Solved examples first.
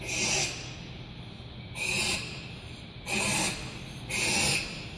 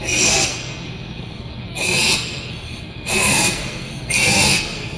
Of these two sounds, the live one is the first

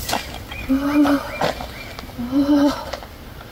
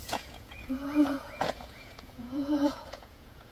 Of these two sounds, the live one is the first